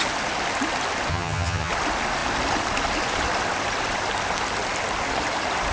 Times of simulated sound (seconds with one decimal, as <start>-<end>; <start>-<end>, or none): 1.1-1.7